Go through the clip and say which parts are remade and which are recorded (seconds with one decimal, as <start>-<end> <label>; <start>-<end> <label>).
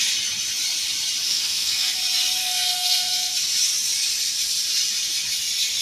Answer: 0.0-1.3 recorded; 1.3-1.9 remade; 1.9-2.4 recorded; 2.4-3.3 remade; 3.3-5.8 recorded